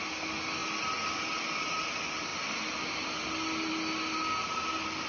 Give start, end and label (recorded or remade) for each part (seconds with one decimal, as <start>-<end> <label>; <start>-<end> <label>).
0.0-5.1 recorded